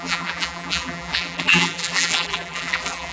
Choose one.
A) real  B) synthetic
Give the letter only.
B